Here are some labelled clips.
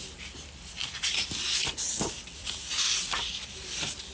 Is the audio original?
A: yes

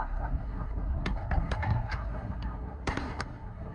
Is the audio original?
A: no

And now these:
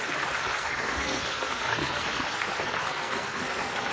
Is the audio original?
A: no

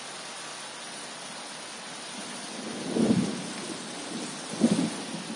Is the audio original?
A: yes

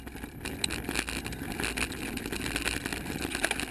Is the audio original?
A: yes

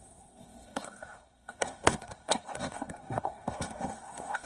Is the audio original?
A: no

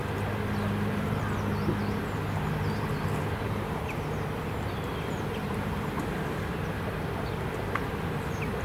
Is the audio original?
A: yes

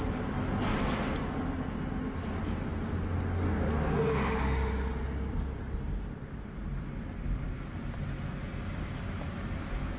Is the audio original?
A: yes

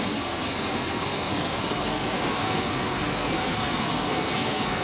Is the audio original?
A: no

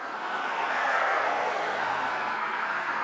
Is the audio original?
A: no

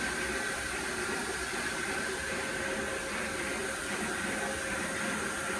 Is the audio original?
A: yes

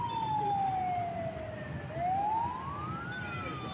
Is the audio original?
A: yes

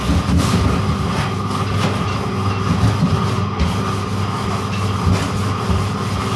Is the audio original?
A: yes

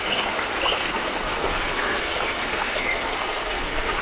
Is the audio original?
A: no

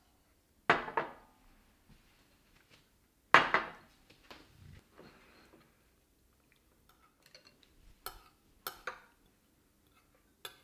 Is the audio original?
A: yes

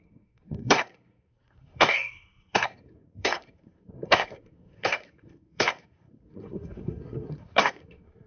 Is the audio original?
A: no